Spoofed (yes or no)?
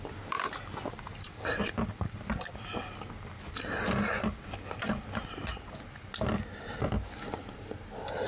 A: no